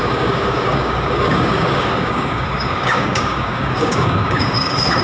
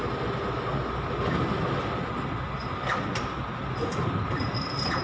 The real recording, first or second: second